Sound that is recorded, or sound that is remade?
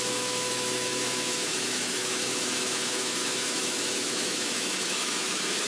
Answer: remade